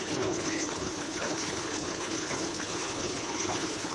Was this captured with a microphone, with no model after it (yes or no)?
no